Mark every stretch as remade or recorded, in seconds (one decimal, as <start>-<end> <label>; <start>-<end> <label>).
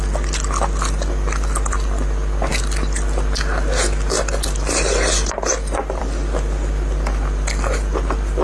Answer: 0.0-8.4 recorded